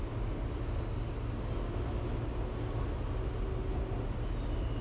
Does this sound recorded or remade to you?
recorded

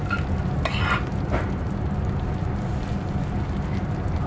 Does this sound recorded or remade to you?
recorded